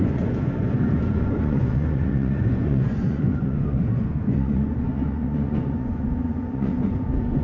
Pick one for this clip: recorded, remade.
remade